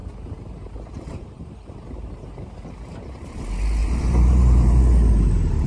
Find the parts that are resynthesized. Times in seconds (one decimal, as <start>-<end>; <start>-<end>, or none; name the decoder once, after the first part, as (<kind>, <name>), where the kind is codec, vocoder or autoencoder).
0.0-3.4 (vocoder, BigVGAN v2); 3.8-4.8